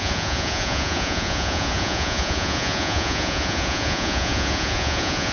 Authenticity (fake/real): fake